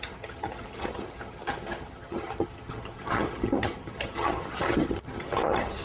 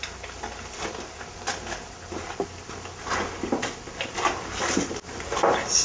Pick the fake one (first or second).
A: first